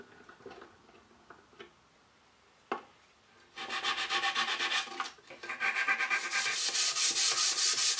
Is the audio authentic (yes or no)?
yes